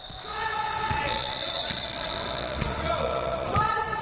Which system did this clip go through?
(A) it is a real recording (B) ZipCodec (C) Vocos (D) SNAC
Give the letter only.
C